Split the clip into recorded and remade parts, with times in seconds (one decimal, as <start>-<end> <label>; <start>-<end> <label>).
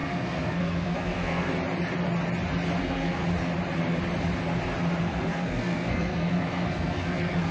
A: 0.0-1.5 remade; 1.5-2.8 recorded; 2.8-3.2 remade; 3.2-5.0 recorded; 5.0-7.5 remade